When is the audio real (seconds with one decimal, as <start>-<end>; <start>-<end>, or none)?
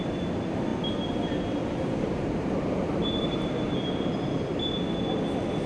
0.0-1.6; 3.8-5.7